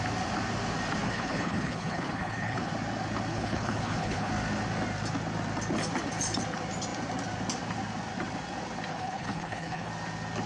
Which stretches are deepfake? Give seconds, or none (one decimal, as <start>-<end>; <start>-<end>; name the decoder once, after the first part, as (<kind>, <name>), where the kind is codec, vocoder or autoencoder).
1.0-2.7 (codec, HILCodec); 3.3-4.3; 8.9-9.9